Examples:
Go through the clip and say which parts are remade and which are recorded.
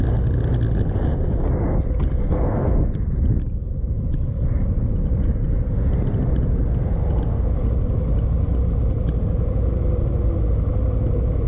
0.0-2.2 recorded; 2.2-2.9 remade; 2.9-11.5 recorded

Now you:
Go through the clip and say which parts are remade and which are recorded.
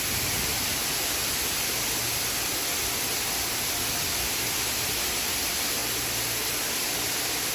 0.0-7.5 recorded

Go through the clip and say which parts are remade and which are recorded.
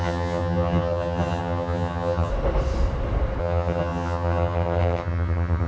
0.0-2.3 remade; 2.3-3.4 recorded; 3.4-5.7 remade